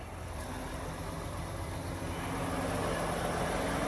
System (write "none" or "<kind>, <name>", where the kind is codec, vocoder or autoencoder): none